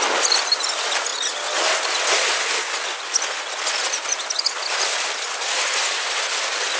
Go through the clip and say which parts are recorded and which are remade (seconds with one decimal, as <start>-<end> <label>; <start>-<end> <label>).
0.0-6.8 recorded